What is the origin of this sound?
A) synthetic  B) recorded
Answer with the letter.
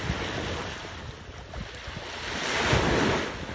B